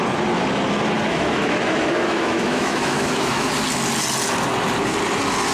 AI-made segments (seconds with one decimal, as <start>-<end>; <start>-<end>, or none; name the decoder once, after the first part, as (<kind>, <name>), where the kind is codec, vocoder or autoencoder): 1.1-3.5 (autoencoder, DAC-VAE)